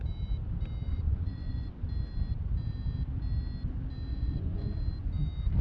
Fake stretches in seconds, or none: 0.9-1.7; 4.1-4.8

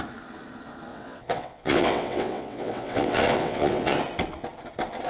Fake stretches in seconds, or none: 0.9-4.0